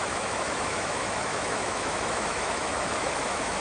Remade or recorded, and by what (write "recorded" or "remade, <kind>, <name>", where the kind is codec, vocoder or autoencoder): remade, autoencoder, DAC-VAE